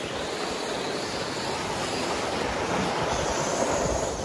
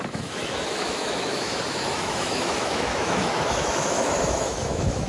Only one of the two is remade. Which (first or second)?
second